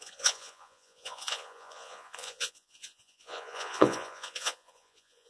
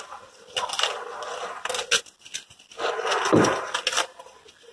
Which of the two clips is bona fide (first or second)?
second